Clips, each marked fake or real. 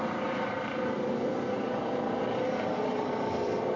fake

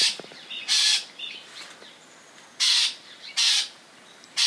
real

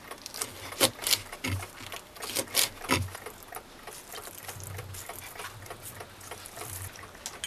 real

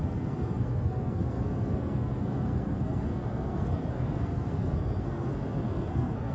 fake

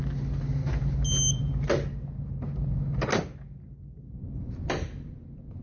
real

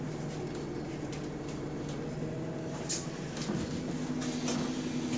real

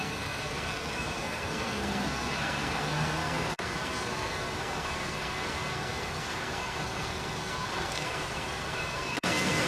fake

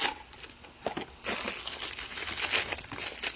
real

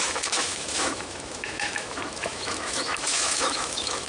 fake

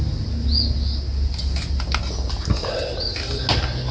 real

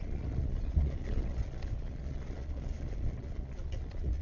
fake